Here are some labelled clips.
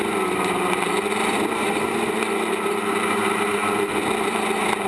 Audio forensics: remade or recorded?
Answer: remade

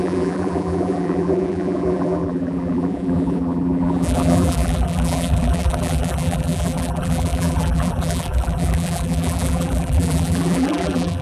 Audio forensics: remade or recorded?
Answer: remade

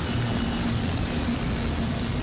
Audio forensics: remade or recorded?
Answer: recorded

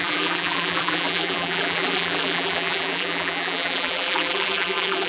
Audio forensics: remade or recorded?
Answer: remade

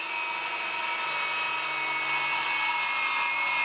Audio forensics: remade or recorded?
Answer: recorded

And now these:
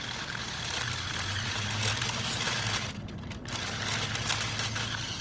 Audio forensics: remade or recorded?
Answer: recorded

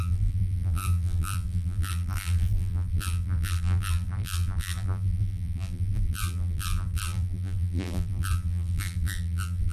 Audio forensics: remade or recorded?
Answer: remade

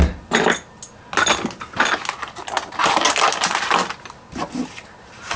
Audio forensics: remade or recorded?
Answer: recorded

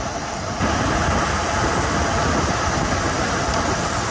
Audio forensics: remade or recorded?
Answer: remade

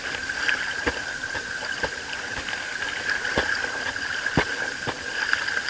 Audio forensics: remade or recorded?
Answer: remade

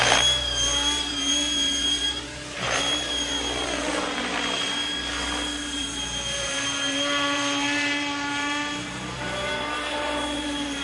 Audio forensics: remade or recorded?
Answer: remade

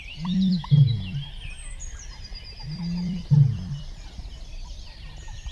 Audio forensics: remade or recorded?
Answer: remade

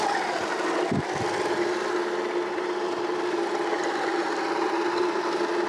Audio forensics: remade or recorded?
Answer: recorded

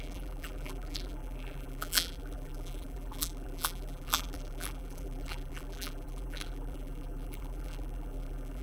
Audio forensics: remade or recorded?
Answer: remade